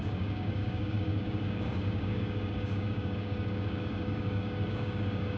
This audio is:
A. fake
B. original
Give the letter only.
A